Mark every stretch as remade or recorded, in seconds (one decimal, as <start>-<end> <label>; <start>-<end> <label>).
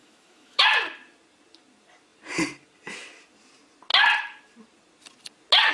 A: 0.0-0.6 remade; 0.6-5.7 recorded